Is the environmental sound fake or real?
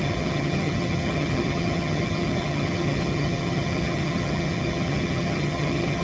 fake